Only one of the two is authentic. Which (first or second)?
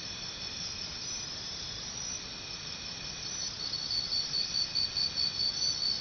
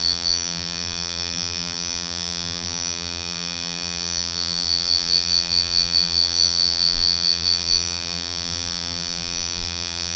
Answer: first